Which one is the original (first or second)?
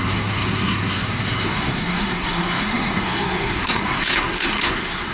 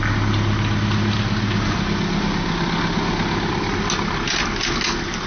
second